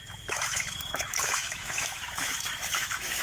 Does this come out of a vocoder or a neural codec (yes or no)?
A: yes